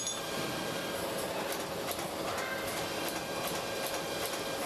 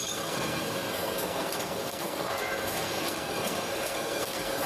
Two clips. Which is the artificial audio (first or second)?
second